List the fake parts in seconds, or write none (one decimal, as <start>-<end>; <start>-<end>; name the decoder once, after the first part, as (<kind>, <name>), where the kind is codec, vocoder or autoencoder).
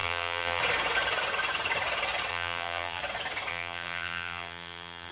0.0-0.6 (vocoder, BigVGAN v2); 2.3-3.0; 3.5-5.1